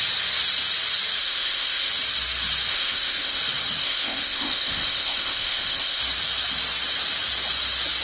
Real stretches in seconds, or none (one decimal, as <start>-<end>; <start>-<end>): 0.0-1.2; 1.9-2.7; 3.4-3.8; 6.0-8.0